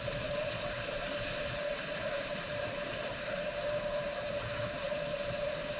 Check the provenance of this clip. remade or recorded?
remade